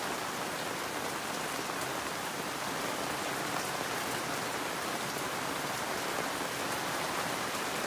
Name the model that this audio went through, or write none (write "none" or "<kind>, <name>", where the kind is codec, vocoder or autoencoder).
none